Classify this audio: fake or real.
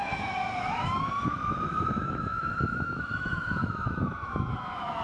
fake